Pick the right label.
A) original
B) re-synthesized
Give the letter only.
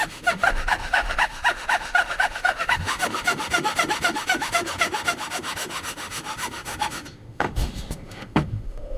B